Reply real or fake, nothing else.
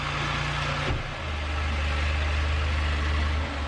real